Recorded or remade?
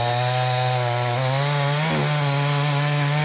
recorded